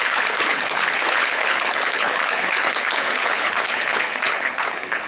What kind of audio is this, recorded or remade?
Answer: remade